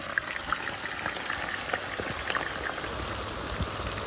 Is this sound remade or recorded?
recorded